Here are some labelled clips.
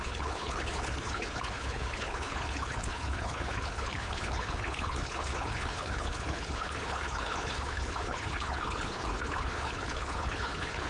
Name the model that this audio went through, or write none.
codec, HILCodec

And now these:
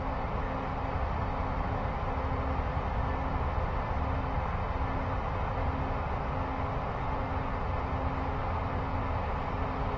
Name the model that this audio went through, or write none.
none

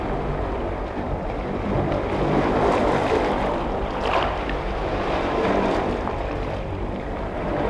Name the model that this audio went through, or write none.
vocoder, BigVGAN v2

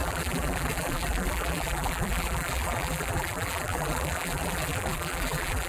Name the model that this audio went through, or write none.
vocoder, BigVGAN v2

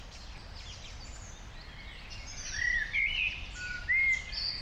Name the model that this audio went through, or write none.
none